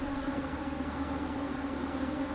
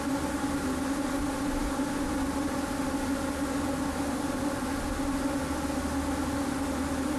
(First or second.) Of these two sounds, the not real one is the first